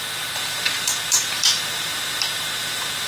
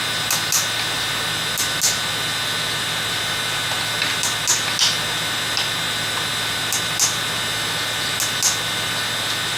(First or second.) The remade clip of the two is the first